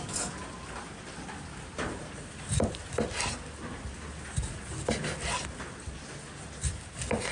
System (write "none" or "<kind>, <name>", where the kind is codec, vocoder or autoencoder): none